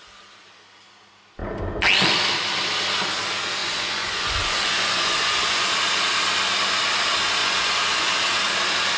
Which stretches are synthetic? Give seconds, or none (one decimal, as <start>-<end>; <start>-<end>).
3.6-5.7; 7.4-8.1